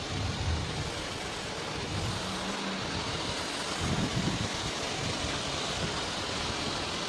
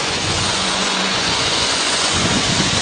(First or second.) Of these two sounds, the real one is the first